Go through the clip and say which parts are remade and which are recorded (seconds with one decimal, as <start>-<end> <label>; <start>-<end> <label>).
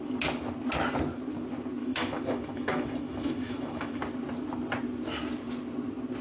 0.0-1.8 recorded; 1.8-4.0 remade; 4.0-6.2 recorded